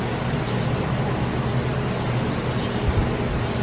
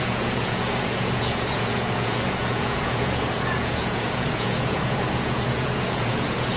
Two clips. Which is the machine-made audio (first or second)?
second